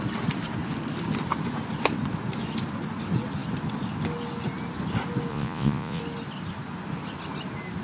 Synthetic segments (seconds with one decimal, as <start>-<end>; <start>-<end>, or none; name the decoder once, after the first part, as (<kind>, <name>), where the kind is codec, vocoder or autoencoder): 5.3-6.0 (vocoder, Vocos)